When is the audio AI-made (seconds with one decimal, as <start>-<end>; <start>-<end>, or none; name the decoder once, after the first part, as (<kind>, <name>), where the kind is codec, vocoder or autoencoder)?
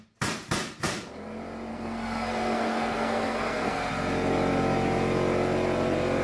1.7-3.9 (codec, SNAC)